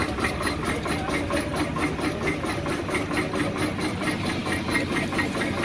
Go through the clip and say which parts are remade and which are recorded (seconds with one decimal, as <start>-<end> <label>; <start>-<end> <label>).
0.0-5.6 recorded